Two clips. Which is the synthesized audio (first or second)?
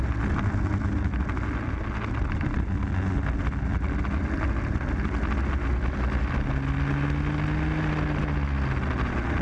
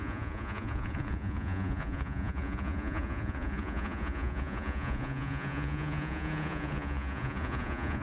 second